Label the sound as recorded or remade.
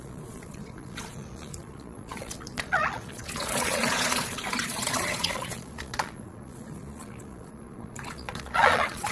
remade